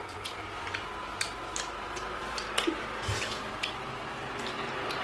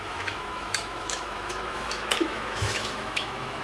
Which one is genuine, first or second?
first